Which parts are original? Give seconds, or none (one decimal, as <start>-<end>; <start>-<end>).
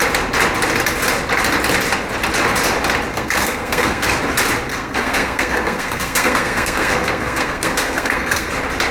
0.0-3.1; 4.2-4.7; 8.5-8.9